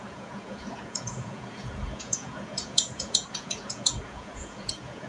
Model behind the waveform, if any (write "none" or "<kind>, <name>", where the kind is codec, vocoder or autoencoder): vocoder, Vocos